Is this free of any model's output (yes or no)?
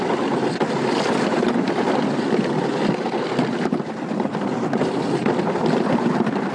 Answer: yes